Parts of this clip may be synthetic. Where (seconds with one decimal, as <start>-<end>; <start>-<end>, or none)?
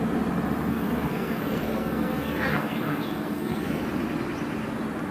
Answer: 0.7-3.8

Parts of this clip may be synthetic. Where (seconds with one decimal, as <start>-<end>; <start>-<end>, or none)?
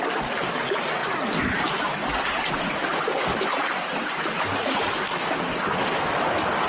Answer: none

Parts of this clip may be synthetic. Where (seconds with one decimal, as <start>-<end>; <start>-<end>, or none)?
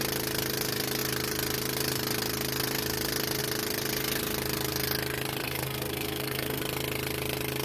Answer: 5.4-6.6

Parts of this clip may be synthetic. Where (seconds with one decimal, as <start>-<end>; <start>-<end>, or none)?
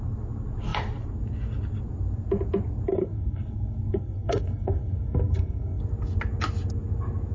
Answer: 2.9-5.8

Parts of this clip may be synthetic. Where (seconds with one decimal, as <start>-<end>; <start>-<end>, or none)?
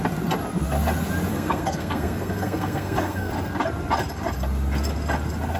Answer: 1.3-3.3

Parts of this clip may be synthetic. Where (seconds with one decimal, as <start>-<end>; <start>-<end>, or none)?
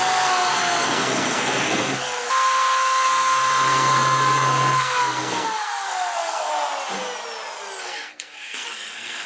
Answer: 0.0-6.5; 7.8-9.3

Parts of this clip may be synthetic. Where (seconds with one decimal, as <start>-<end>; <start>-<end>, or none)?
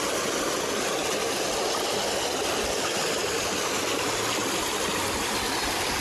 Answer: none